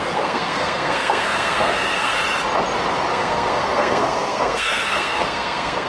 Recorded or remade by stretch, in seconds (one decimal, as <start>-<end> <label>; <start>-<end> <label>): 0.0-2.2 remade; 2.2-3.1 recorded; 3.1-5.9 remade